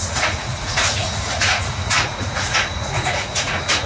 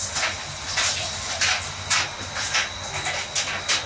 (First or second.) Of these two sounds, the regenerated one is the first